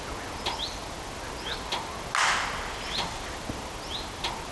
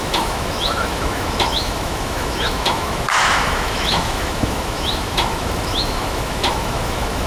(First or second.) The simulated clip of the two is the second